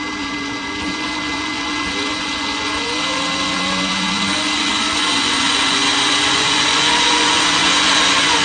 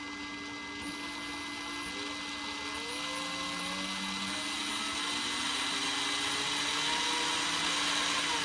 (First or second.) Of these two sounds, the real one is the second